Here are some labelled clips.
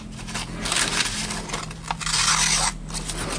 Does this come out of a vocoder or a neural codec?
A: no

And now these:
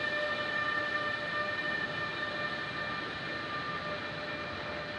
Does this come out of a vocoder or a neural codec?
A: no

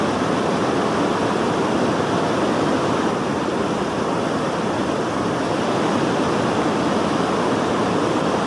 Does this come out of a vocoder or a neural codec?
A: no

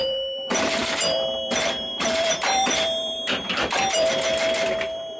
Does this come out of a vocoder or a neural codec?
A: yes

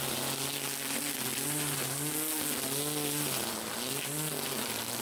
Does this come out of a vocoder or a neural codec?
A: no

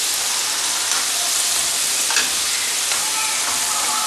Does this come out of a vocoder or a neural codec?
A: no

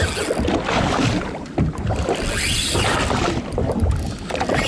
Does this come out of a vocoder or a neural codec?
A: no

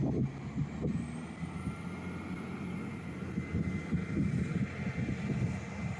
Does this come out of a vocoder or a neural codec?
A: no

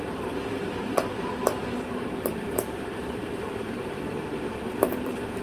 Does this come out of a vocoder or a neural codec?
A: yes